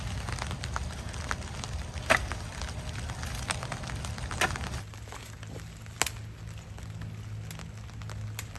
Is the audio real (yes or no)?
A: yes